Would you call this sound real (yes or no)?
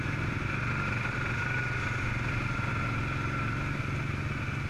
yes